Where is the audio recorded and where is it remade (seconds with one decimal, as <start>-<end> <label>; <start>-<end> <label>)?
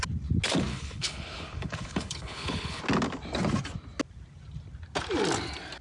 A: 0.0-0.7 recorded; 0.7-2.8 remade; 2.8-5.8 recorded